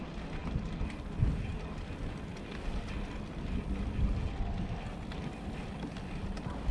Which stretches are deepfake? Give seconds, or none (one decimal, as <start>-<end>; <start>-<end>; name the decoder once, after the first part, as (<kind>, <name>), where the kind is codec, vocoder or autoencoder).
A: none